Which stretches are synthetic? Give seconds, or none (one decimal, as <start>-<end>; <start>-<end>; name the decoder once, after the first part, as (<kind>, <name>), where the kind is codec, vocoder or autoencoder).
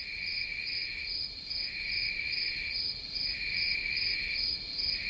none